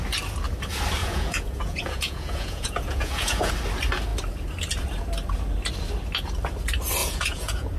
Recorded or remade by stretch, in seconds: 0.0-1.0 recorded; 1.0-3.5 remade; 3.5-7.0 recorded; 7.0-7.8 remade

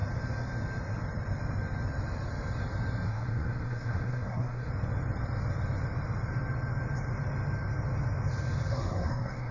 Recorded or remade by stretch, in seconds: 0.0-3.1 recorded; 3.1-4.7 remade; 4.7-8.7 recorded; 8.7-9.5 remade